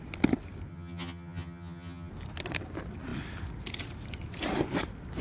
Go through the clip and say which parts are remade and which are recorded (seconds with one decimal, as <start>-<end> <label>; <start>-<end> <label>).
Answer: 0.0-0.7 recorded; 0.7-2.1 remade; 2.1-5.2 recorded